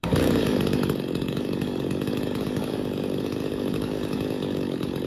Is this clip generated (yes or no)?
yes